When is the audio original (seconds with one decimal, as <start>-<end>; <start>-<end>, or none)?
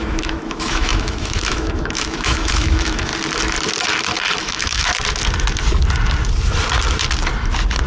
3.1-4.4; 4.9-7.9